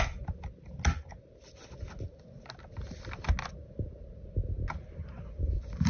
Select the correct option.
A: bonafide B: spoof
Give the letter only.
A